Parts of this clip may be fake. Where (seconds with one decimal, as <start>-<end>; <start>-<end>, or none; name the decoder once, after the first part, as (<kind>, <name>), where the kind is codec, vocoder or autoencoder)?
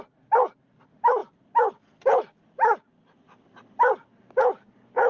none